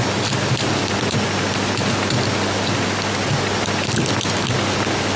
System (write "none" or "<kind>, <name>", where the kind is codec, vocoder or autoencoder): none